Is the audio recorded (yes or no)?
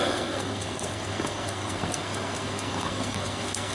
no